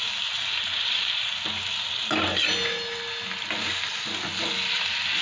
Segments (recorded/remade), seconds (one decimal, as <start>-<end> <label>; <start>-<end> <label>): 0.0-5.2 recorded